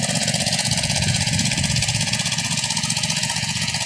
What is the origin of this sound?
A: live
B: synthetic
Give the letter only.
B